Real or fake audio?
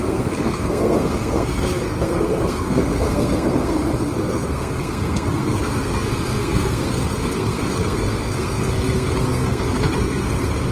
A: fake